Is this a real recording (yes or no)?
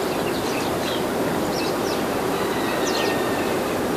no